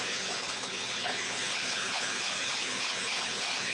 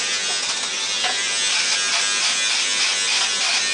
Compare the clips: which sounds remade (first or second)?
first